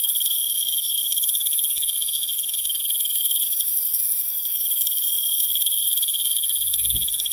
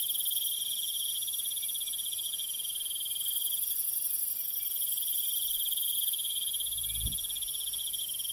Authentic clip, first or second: second